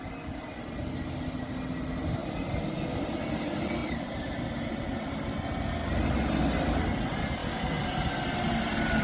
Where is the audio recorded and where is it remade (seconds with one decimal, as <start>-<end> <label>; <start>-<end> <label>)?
0.0-3.8 recorded; 3.8-4.7 remade; 4.7-7.4 recorded; 7.4-8.1 remade; 8.1-9.0 recorded